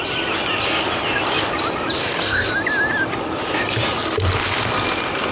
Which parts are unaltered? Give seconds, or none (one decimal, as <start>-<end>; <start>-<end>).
0.0-2.0; 2.5-5.3